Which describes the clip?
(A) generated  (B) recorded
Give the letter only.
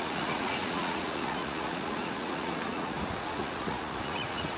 A